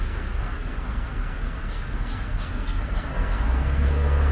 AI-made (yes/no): yes